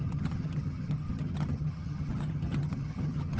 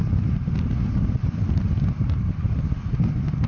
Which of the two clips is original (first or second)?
second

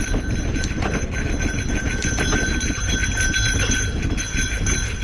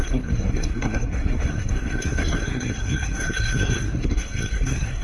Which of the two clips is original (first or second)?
first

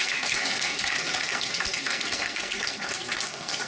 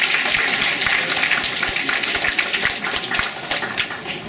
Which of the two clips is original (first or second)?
second